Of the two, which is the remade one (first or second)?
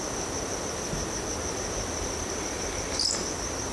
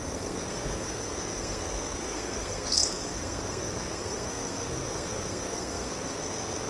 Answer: second